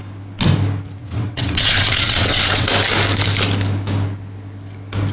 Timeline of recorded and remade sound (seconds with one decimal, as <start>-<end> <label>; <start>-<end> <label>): 0.0-1.0 recorded; 1.0-2.7 remade; 2.7-5.1 recorded